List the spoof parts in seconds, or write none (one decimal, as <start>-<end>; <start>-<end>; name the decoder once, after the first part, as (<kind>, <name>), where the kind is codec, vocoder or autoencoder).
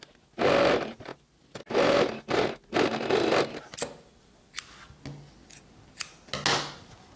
none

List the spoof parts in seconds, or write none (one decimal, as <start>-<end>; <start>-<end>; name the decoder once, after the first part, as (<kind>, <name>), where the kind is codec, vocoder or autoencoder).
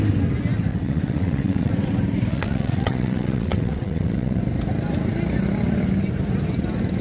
0.7-1.7 (vocoder, WaveNeXt); 2.3-4.4